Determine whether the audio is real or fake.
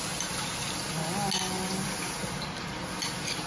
real